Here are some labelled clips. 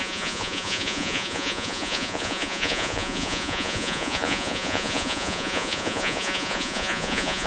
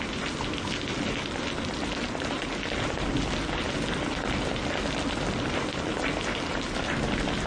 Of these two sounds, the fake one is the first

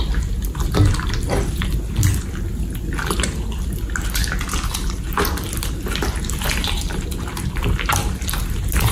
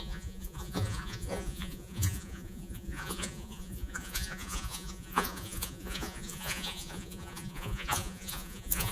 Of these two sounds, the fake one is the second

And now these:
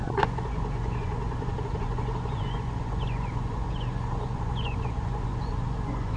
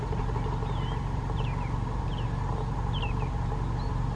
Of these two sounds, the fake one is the first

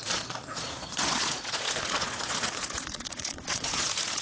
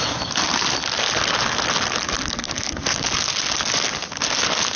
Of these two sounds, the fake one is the first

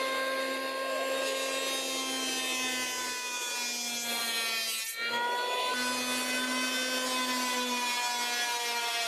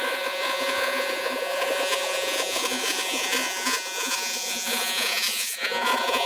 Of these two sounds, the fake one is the second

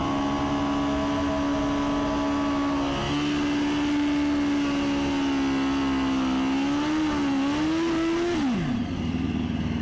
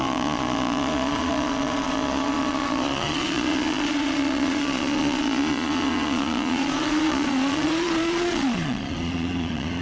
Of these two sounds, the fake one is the second